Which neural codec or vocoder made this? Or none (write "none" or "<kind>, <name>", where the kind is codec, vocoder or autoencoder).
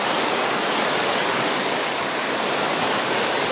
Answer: codec, DAC